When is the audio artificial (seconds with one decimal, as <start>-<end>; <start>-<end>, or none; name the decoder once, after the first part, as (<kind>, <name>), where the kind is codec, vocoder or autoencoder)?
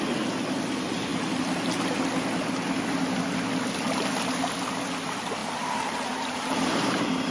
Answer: 5.4-7.3 (vocoder, BigVGAN v2)